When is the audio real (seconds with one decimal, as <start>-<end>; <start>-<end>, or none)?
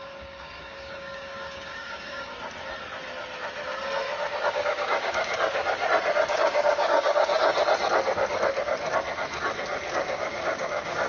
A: 2.3-4.5; 5.6-6.3; 7.4-9.9